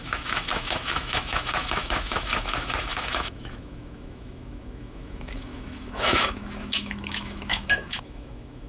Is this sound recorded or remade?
remade